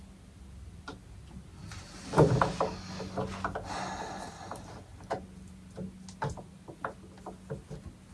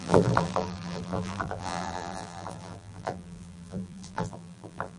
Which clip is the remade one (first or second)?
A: second